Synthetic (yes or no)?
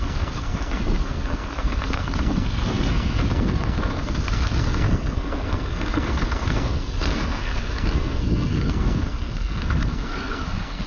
yes